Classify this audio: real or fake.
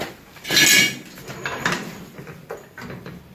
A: real